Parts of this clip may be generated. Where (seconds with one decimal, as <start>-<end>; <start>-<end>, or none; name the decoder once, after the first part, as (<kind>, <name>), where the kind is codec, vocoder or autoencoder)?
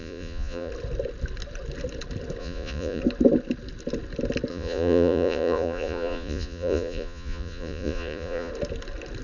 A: 0.0-0.7 (vocoder, Vocos); 2.4-3.0; 4.5-8.5